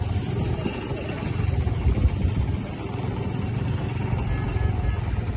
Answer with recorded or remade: recorded